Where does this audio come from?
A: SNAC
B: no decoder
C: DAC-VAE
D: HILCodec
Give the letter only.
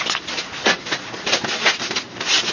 B